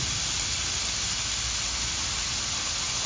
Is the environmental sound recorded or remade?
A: recorded